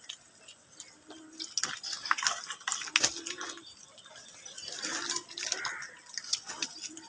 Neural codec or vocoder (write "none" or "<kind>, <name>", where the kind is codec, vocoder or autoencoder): none